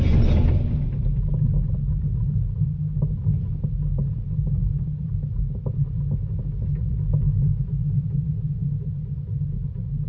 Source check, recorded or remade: recorded